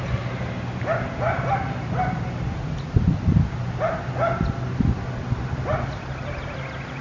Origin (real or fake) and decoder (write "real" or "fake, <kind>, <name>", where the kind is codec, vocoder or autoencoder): real